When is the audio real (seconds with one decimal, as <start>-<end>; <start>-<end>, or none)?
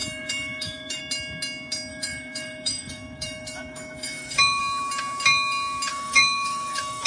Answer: 1.0-1.9; 4.6-5.9